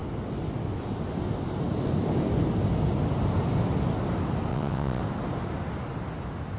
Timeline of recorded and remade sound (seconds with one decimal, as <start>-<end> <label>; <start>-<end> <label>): 0.0-4.5 recorded; 4.5-5.0 remade; 5.0-6.6 recorded